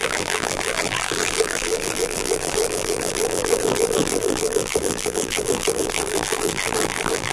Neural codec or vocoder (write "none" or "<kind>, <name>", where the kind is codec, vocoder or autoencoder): vocoder, BigVGAN v2